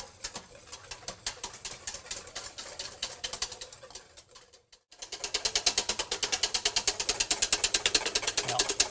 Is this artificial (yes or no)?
no